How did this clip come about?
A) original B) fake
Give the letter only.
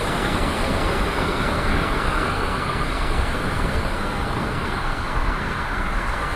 B